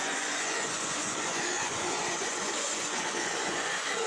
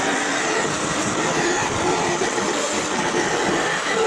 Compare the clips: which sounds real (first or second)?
second